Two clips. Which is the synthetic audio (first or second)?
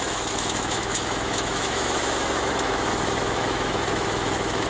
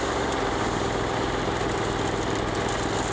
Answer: first